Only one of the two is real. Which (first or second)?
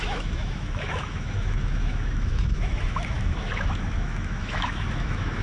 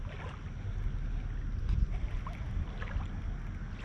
second